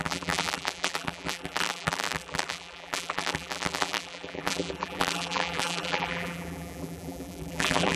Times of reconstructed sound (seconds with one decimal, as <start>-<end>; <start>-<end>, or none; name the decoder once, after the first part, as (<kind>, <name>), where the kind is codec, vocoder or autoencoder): 0.0-8.0 (vocoder, BigVGAN v2)